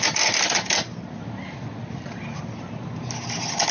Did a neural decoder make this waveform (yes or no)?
no